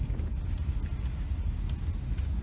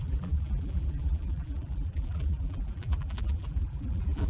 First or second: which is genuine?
first